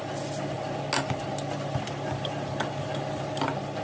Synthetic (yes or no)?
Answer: no